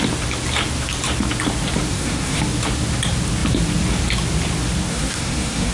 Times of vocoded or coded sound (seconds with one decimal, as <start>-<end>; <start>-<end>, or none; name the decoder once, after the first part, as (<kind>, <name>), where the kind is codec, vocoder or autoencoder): 1.9-2.4 (codec, SNAC); 4.9-5.7